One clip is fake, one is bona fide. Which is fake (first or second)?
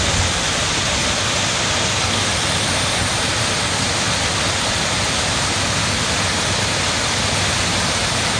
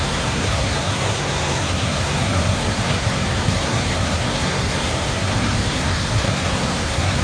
second